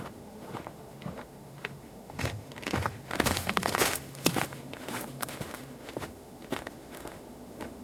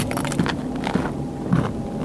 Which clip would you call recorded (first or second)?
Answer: second